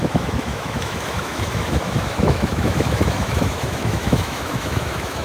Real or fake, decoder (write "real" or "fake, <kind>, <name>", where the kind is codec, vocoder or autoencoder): fake, autoencoder, DAC-VAE